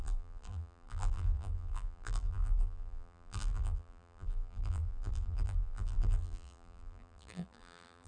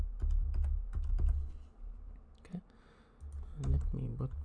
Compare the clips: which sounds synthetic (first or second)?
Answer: first